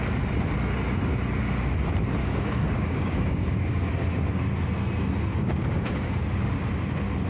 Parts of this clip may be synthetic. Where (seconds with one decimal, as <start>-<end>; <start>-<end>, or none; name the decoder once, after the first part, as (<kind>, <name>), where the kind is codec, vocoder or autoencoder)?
2.2-3.9 (codec, DAC); 5.6-6.7